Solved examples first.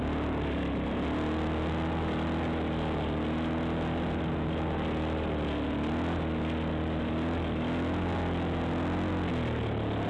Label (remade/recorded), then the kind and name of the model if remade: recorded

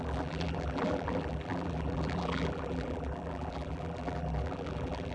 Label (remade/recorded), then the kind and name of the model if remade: remade, vocoder, BigVGAN v2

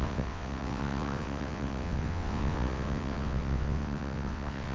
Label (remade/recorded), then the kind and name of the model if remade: remade, vocoder, WaveNeXt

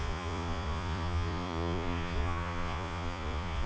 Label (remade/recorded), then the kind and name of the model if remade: remade, vocoder, Vocos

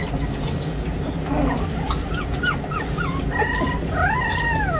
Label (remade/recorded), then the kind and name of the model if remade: recorded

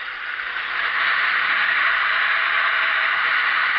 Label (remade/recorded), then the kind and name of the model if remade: recorded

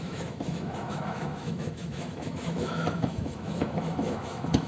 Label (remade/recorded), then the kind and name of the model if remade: remade, autoencoder, DAC-VAE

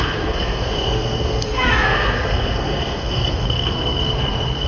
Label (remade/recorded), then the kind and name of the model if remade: remade, codec, SNAC